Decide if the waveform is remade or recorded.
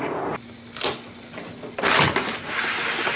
recorded